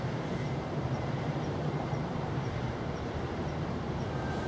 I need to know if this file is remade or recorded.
remade